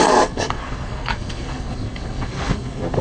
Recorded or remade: remade